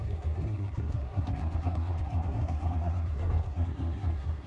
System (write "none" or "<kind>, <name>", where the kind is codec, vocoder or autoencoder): codec, SNAC